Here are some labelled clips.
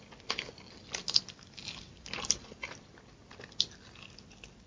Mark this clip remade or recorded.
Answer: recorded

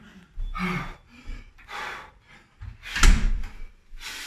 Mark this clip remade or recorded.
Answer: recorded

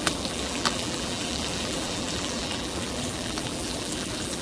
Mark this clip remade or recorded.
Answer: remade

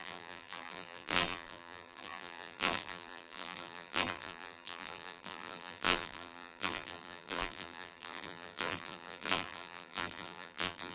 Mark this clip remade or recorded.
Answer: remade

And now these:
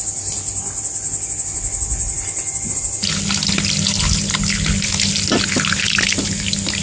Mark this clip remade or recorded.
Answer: recorded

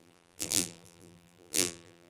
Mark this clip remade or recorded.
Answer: remade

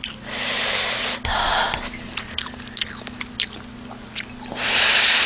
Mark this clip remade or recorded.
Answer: recorded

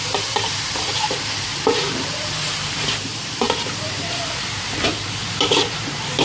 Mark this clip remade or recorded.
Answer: remade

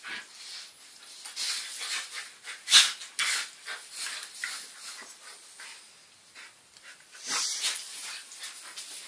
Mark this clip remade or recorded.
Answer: recorded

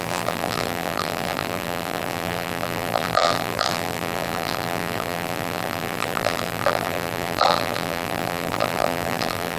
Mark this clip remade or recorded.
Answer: remade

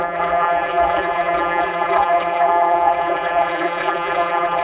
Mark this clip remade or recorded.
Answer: remade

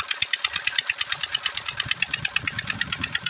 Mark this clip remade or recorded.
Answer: recorded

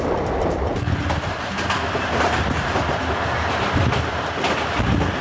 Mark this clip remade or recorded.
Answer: recorded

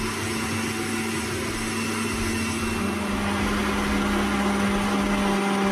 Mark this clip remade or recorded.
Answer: recorded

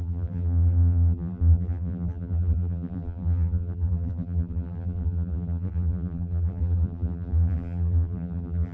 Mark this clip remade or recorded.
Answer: remade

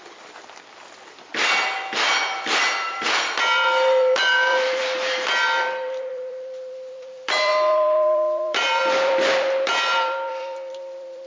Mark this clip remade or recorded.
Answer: remade